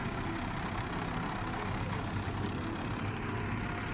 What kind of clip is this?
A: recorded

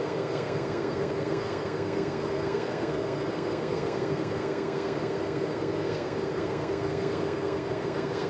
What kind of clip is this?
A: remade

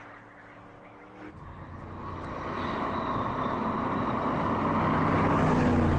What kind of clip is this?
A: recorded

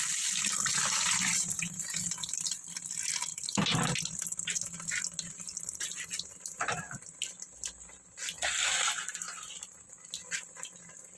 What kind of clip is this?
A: recorded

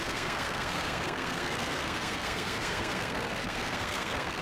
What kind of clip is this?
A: remade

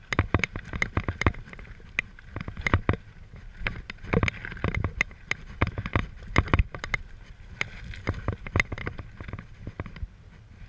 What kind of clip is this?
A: recorded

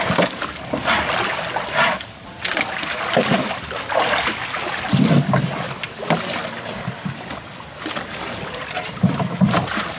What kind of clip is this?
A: recorded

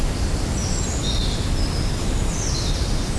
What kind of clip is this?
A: recorded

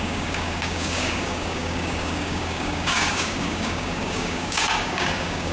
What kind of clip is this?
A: remade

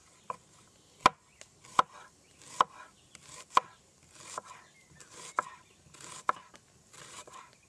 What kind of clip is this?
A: recorded